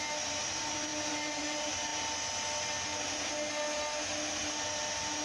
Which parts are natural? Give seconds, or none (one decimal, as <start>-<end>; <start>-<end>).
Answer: 0.0-5.2

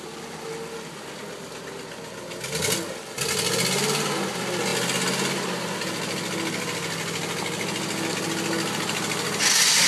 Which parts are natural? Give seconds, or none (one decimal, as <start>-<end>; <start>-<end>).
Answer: 0.0-9.9

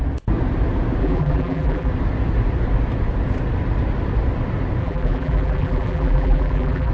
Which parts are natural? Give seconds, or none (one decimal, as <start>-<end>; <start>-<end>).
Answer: 0.0-1.0; 1.9-4.8

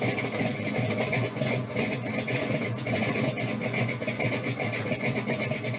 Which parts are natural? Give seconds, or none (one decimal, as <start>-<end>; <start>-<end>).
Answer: none